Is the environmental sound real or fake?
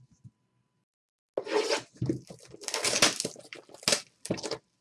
real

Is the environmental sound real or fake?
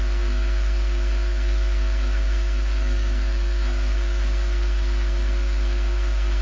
fake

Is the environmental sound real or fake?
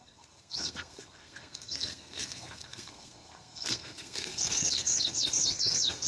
fake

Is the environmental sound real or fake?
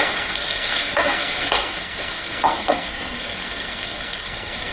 fake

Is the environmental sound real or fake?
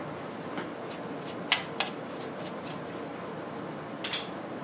real